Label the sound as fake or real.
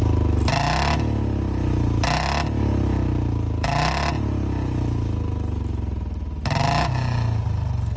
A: real